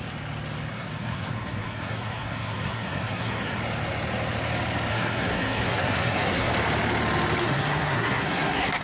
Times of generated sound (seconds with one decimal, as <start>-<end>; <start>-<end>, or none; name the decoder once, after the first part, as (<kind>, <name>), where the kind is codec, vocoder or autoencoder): 0.7-3.6 (codec, SNAC); 4.9-6.5; 7.4-8.8